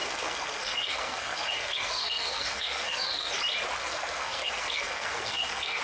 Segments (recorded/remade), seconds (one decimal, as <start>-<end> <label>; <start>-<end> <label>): 0.0-3.3 remade; 3.3-3.8 recorded; 3.8-5.8 remade